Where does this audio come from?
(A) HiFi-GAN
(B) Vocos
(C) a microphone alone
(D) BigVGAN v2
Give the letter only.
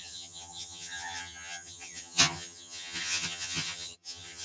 A